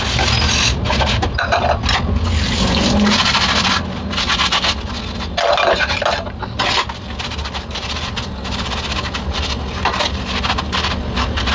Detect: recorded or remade recorded